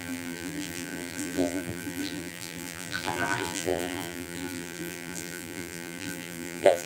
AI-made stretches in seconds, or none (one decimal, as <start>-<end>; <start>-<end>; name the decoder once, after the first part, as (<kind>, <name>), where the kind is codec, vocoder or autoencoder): 0.0-6.9 (vocoder, BigVGAN v2)